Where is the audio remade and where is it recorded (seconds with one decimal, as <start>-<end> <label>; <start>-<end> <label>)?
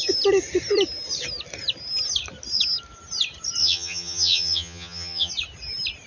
0.0-3.6 recorded; 3.6-5.3 remade; 5.3-6.1 recorded